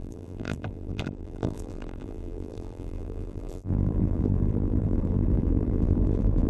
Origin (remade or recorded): remade